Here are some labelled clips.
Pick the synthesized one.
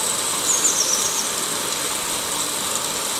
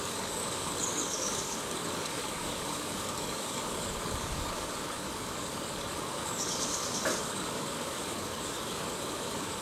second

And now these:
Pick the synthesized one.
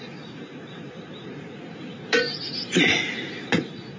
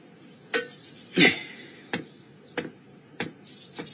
first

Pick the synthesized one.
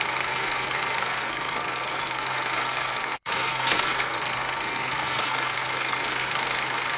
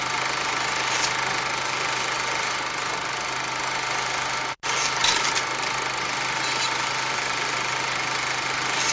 first